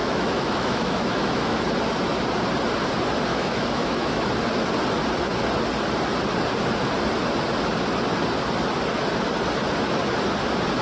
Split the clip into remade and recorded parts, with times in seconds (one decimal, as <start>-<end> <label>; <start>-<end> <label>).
0.0-1.6 remade; 1.6-3.3 recorded; 3.3-4.2 remade; 4.2-10.8 recorded